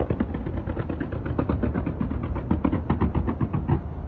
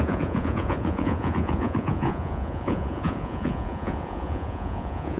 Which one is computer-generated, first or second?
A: second